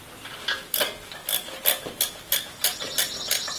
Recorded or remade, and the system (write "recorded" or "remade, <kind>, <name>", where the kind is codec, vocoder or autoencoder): recorded